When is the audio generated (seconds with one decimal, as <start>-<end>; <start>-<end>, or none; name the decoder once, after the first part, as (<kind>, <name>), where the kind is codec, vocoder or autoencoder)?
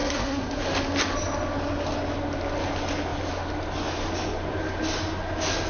0.0-0.6 (codec, SNAC)